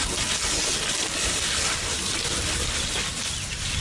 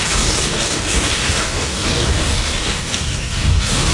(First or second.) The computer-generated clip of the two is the second